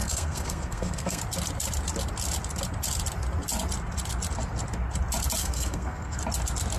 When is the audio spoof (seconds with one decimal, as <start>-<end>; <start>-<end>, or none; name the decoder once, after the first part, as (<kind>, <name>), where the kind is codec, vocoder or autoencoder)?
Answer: 0.0-1.2 (codec, SNAC); 5.4-6.2

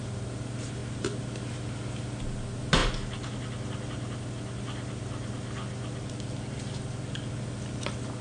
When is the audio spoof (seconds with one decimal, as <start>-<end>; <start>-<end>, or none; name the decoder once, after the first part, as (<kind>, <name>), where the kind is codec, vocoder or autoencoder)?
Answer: none